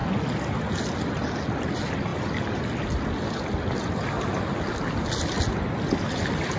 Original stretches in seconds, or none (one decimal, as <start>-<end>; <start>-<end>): 0.0-6.6